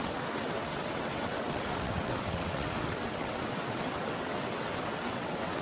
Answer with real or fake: fake